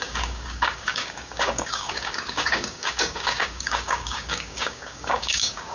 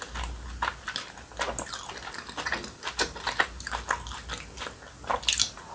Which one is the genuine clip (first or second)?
second